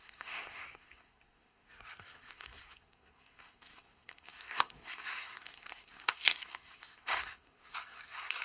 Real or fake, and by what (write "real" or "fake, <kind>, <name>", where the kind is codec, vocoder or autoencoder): fake, codec, SNAC